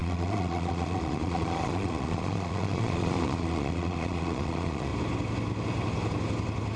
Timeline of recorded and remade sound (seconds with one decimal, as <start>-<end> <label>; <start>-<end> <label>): 0.0-4.9 remade; 4.9-6.8 recorded